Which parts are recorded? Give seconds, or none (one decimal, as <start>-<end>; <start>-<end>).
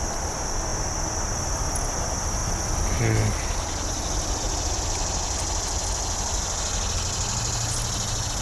0.0-8.4